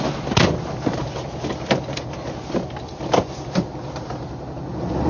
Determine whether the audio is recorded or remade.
recorded